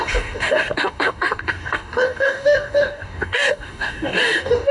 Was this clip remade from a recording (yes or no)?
yes